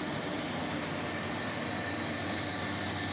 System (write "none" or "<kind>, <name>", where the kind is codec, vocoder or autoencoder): none